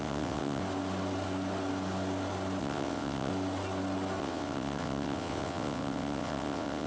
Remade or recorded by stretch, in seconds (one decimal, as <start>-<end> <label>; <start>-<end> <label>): 0.0-0.6 remade; 0.6-2.6 recorded; 2.6-3.3 remade; 3.3-4.2 recorded; 4.2-6.9 remade